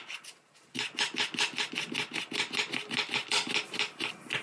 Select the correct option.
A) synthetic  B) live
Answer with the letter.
B